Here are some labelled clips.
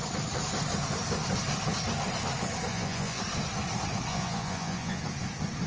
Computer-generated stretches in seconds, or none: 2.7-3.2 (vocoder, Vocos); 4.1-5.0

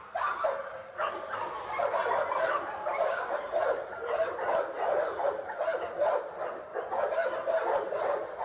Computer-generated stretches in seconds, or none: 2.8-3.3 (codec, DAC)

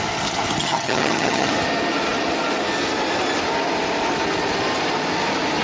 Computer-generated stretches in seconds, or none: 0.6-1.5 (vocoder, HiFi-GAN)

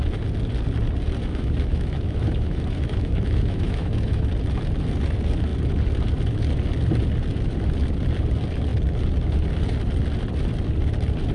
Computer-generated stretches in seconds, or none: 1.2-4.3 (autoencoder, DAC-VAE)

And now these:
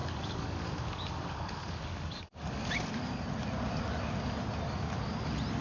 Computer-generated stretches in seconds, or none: 0.0-2.7 (codec, DAC)

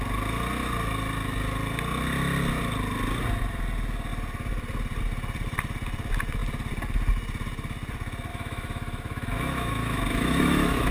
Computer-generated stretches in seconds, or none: 8.3-10.9 (autoencoder, DAC-VAE)